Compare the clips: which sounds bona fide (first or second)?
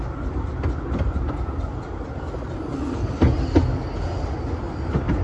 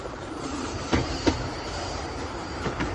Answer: first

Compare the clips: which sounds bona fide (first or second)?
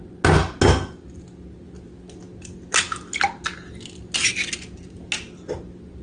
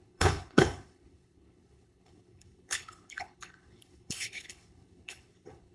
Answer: first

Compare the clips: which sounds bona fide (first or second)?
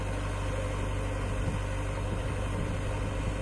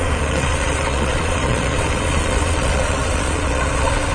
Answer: first